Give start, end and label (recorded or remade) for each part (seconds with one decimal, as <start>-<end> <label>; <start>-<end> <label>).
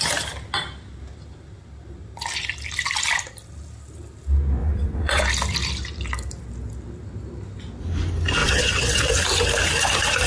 0.0-4.6 recorded; 4.6-5.2 remade; 5.2-8.4 recorded; 8.4-9.1 remade; 9.1-10.3 recorded